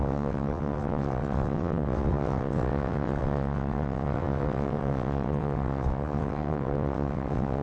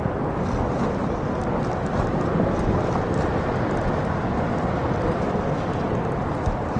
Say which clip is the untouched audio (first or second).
second